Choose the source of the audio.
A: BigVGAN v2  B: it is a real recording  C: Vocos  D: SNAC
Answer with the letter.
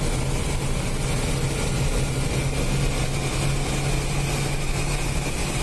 B